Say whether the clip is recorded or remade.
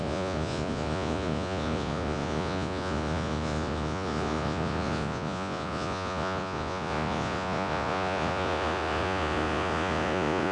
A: remade